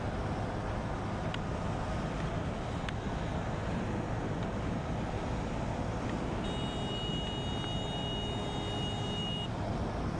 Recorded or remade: recorded